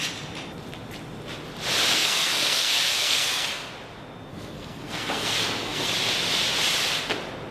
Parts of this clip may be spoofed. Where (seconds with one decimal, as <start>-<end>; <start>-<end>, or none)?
1.9-3.7; 4.3-5.9